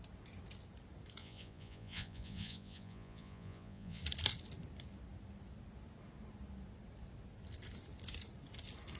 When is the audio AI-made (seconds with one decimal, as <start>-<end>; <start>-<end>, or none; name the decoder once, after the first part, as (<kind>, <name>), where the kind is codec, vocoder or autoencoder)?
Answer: 1.2-4.0 (vocoder, Vocos)